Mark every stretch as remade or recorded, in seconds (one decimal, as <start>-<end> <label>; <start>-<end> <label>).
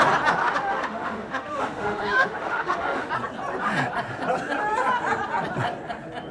0.0-0.4 recorded; 0.4-3.1 remade; 3.1-6.3 recorded